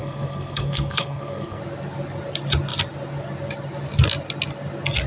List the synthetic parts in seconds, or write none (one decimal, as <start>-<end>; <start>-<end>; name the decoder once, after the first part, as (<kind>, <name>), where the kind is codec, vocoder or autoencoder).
0.0-1.6 (codec, SNAC)